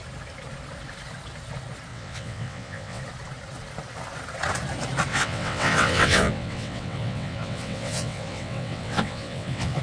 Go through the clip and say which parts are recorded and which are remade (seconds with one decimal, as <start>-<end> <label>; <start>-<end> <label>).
0.0-1.9 recorded; 1.9-3.0 remade; 3.0-5.1 recorded; 5.1-9.8 remade